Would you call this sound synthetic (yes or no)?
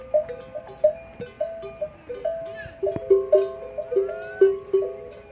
no